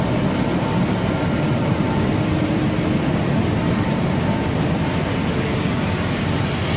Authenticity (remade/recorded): recorded